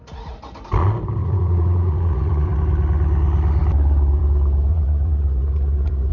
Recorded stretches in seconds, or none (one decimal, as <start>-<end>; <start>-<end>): 0.0-1.2; 2.6-4.7